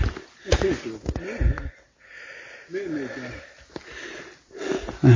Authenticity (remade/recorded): recorded